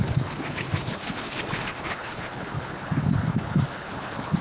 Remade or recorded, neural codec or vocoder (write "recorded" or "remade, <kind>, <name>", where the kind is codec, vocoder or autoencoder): remade, codec, HILCodec